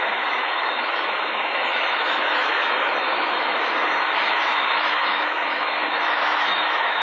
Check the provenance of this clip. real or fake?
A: fake